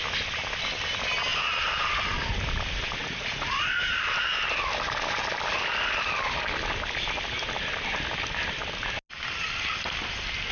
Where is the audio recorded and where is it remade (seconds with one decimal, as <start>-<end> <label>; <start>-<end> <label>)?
0.0-3.0 recorded; 3.0-3.7 remade; 3.7-10.5 recorded